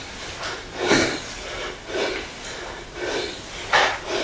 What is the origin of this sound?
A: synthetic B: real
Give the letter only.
B